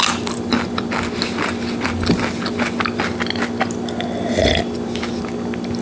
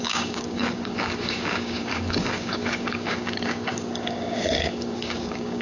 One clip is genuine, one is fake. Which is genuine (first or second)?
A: first